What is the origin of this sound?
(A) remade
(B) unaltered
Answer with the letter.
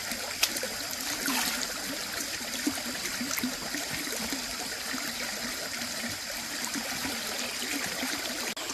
A